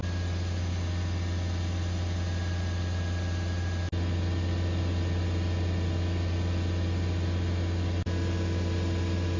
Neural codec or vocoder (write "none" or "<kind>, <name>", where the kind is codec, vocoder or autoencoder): none